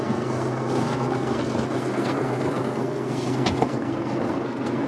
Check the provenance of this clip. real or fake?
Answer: fake